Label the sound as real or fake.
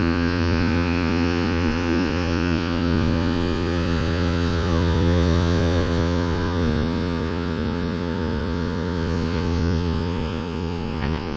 fake